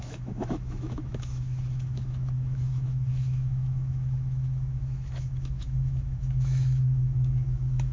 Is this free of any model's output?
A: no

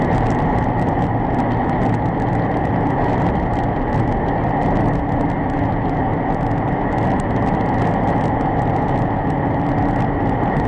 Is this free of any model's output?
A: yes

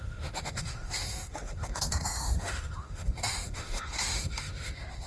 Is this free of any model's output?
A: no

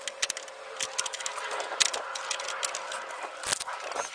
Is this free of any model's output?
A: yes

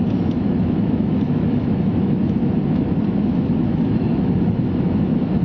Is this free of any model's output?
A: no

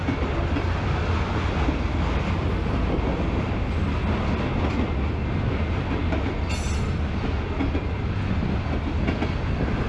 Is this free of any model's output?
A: yes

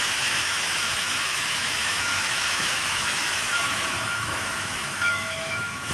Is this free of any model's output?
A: no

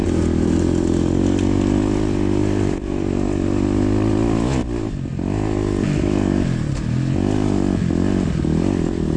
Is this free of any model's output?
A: yes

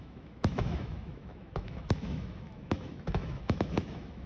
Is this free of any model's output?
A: no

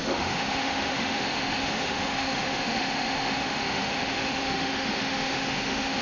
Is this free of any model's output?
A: no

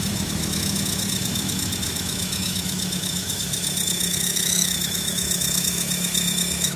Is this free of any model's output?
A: no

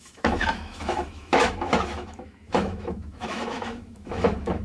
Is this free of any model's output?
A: no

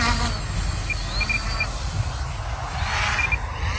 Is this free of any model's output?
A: yes